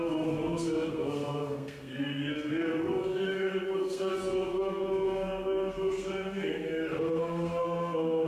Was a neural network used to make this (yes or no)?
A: yes